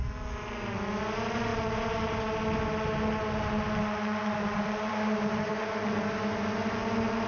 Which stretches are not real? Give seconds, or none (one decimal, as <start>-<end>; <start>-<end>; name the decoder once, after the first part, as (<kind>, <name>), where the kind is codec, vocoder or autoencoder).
none